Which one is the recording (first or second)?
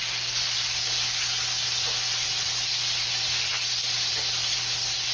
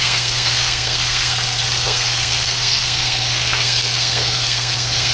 first